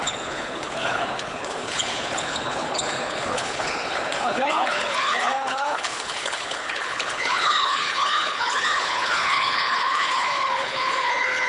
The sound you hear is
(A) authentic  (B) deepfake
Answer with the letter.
B